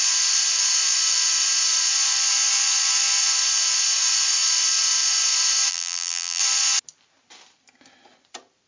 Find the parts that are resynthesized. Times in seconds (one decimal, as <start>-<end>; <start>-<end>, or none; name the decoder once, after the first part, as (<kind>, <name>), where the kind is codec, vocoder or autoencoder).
5.7-6.4 (vocoder, BigVGAN v2)